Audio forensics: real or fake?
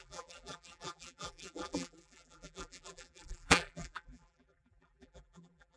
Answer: fake